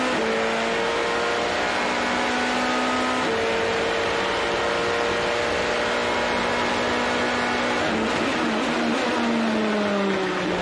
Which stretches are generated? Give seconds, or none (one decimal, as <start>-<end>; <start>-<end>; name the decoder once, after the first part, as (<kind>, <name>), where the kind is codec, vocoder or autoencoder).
none